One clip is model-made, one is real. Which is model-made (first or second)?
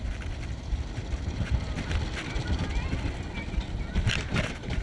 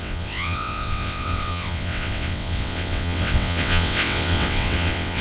second